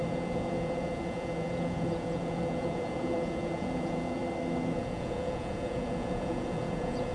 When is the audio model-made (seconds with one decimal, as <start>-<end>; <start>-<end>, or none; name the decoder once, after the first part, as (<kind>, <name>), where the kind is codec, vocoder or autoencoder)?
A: 0.0-4.2 (vocoder, Vocos); 4.8-7.1